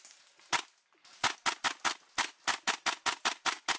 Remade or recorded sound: recorded